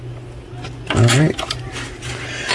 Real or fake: real